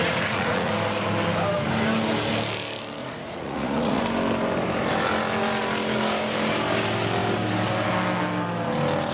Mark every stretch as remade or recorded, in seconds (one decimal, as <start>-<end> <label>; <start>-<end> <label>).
0.0-0.7 remade; 0.7-3.0 recorded; 3.0-4.0 remade; 4.0-9.1 recorded